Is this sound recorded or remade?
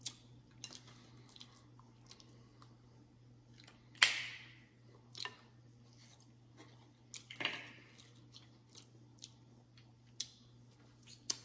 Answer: recorded